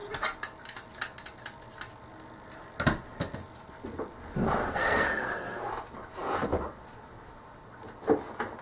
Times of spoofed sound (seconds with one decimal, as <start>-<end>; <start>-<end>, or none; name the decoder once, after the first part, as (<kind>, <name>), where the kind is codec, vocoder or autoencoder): 4.6-5.7 (codec, SNAC)